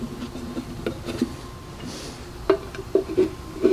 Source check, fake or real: real